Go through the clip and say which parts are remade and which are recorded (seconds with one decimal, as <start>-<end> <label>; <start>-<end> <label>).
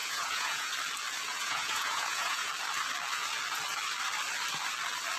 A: 0.0-0.7 remade; 0.7-1.3 recorded; 1.3-2.5 remade; 2.5-5.2 recorded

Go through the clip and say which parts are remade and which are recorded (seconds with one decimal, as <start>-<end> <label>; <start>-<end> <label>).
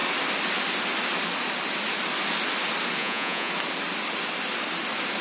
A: 0.0-3.0 recorded; 3.0-3.5 remade; 3.5-5.2 recorded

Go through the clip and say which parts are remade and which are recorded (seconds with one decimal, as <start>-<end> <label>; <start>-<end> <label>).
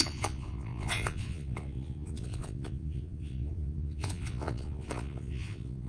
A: 0.0-5.9 remade